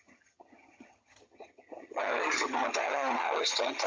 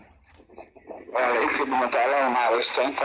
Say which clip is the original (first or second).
second